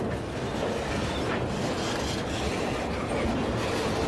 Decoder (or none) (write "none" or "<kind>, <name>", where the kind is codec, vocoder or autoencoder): none